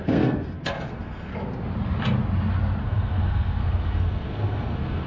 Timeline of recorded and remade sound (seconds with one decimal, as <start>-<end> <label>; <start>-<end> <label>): 0.0-1.3 remade; 1.3-2.8 recorded; 2.8-5.1 remade